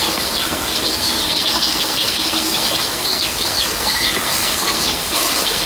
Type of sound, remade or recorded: remade